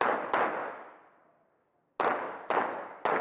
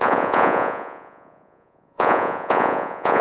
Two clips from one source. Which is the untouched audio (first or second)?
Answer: first